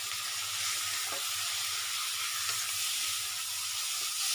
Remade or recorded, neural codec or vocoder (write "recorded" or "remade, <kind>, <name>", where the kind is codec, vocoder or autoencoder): recorded